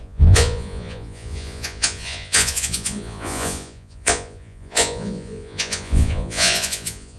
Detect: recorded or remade remade